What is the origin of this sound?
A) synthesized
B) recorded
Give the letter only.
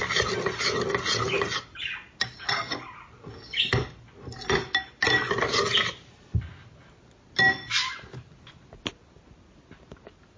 B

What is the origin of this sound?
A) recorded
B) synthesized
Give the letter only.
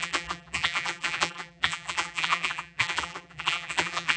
B